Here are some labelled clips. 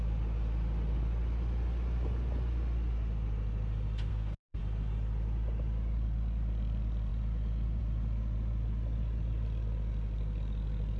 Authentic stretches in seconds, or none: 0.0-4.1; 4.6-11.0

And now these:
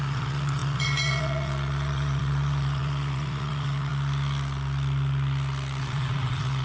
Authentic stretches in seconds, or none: 3.9-5.8

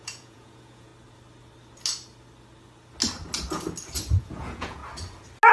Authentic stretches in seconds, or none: 0.9-4.2; 4.8-5.5

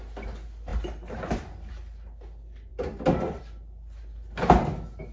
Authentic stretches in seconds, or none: 0.0-2.7; 3.4-5.1

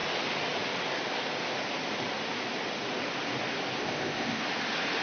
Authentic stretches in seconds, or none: 0.0-3.8; 4.4-5.0

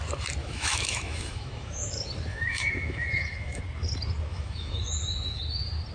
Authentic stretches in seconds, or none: 0.0-0.4; 1.9-2.3; 3.6-4.3; 5.4-5.9

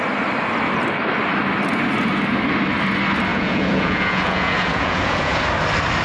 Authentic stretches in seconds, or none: 0.0-3.3; 5.4-6.0

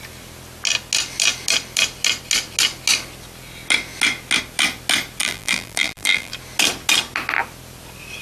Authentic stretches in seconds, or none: 0.0-5.2; 6.3-8.2